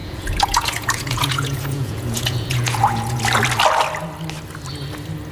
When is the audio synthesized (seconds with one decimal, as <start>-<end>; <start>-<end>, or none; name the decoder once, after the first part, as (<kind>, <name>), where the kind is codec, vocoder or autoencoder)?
0.0-3.2 (vocoder, Vocos)